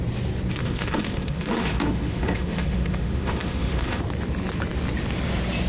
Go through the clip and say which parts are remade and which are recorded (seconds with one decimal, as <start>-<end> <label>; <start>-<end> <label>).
0.0-0.6 recorded; 0.6-4.0 remade; 4.0-5.7 recorded